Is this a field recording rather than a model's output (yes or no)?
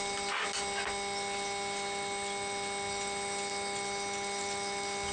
yes